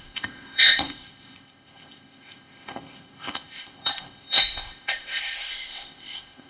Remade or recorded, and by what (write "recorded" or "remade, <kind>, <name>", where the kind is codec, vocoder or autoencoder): remade, codec, ZipCodec